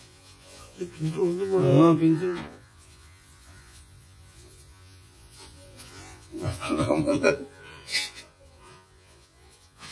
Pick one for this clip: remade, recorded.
remade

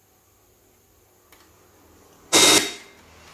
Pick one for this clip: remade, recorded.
recorded